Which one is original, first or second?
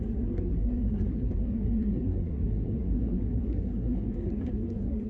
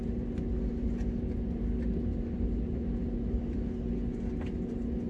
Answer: second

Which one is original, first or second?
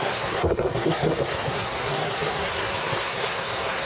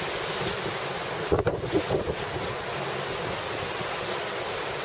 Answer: second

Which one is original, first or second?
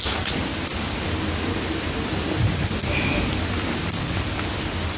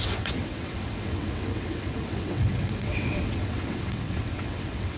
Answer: first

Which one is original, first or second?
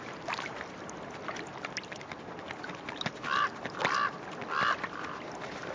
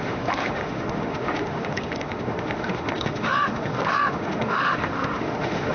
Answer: first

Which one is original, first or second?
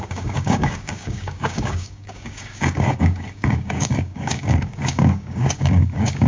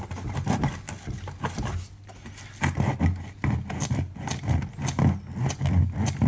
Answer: second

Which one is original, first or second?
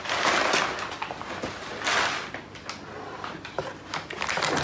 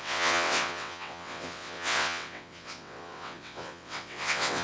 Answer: first